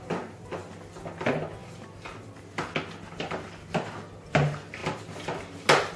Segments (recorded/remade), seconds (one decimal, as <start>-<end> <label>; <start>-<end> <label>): 0.0-6.0 recorded